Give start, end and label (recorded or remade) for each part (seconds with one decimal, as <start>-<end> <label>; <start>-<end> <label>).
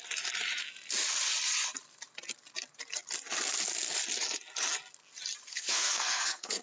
0.0-5.5 recorded; 5.5-6.6 remade